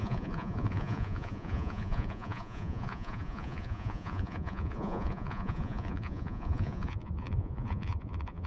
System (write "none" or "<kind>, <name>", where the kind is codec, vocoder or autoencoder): vocoder, Vocos